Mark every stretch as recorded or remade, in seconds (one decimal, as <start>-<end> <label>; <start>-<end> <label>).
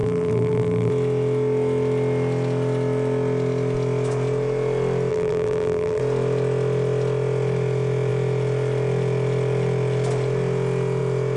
0.0-0.9 remade; 0.9-5.1 recorded; 5.1-6.0 remade; 6.0-11.4 recorded